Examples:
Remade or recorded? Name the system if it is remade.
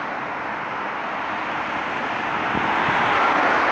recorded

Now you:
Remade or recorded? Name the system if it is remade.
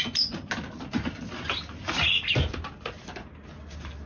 recorded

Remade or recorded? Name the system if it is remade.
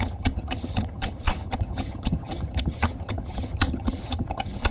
remade, vocoder, HiFi-GAN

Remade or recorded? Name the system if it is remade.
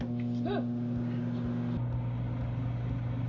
recorded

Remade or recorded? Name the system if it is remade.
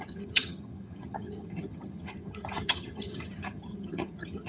remade, vocoder, HiFi-GAN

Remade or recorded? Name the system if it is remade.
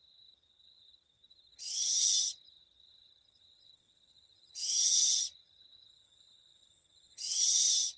remade, vocoder, HiFi-GAN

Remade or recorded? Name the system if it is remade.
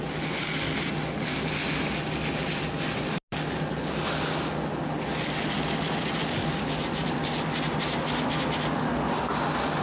recorded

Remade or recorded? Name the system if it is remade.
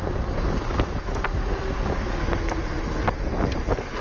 recorded